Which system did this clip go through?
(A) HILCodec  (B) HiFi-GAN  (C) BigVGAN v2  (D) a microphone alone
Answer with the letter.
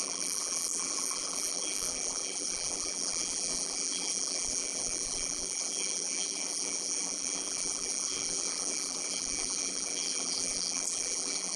C